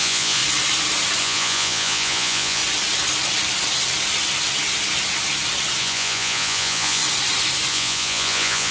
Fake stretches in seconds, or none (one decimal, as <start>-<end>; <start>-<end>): 0.0-0.4; 1.2-2.6; 5.8-7.0; 7.7-8.7